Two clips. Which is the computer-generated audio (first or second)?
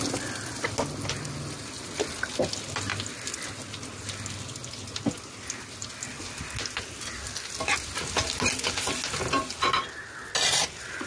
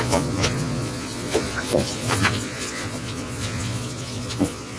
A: second